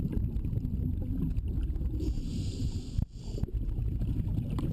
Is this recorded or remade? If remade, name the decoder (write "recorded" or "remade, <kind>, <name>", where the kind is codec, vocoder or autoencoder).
recorded